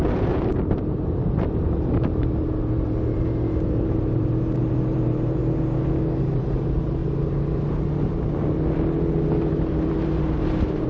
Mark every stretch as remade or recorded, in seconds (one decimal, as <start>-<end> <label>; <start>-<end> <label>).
0.0-5.4 remade; 5.4-6.2 recorded; 6.2-7.0 remade; 7.0-9.4 recorded; 9.4-10.9 remade